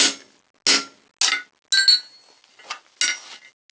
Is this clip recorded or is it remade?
recorded